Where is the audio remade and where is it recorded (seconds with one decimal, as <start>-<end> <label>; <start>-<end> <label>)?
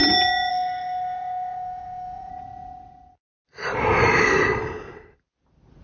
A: 0.0-0.5 recorded; 0.5-2.3 remade; 2.3-5.8 recorded